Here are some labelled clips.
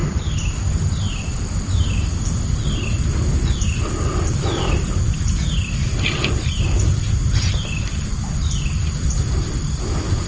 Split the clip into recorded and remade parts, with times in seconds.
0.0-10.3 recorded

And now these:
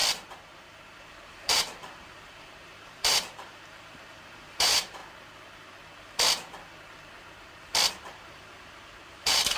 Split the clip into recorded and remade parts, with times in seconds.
0.0-1.0 recorded; 1.0-5.0 remade; 5.0-7.9 recorded; 7.9-9.6 remade